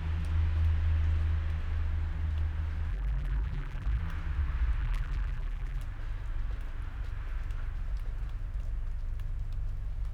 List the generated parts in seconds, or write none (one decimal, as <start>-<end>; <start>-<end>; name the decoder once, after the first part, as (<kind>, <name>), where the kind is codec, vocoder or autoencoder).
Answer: 2.9-4.0 (vocoder, BigVGAN v2); 4.8-5.8